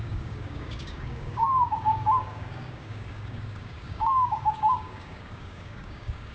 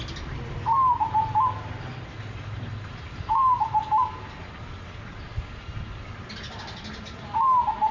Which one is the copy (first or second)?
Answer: first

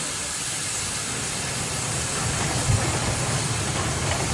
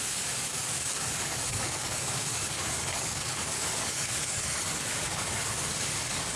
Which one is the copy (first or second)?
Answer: second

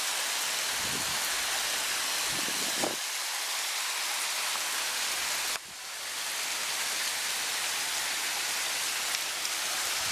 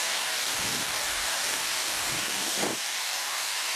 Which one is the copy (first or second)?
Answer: second